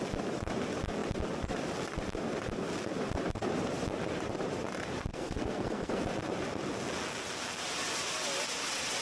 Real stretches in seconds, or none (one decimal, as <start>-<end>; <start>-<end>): 0.0-5.1; 6.0-9.0